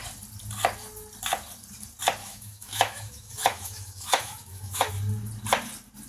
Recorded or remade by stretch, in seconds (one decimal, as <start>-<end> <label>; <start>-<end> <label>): 0.0-2.2 recorded; 2.2-4.9 remade; 4.9-6.1 recorded